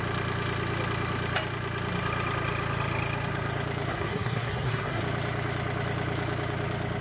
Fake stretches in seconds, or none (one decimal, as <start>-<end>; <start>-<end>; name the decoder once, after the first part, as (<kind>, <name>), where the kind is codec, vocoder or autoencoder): 3.9-5.0 (codec, SNAC)